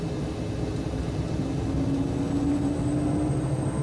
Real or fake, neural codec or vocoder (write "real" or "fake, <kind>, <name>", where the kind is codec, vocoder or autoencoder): real